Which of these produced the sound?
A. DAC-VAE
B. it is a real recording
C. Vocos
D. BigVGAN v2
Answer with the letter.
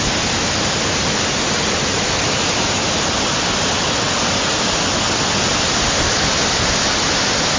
B